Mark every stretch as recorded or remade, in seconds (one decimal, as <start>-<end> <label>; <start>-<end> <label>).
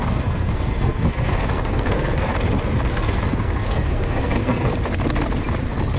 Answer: 0.0-2.3 remade; 2.3-2.9 recorded; 2.9-4.7 remade; 4.7-6.0 recorded